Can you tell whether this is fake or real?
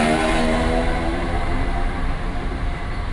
fake